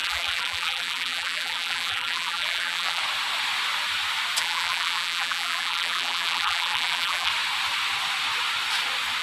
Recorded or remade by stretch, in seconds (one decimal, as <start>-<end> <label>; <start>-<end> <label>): 0.0-3.0 remade; 3.0-4.4 recorded; 4.4-7.3 remade; 7.3-9.2 recorded